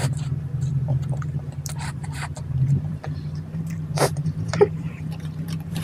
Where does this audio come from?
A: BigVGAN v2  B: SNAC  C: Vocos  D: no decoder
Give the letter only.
A